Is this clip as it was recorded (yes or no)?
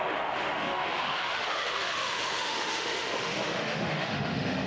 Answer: no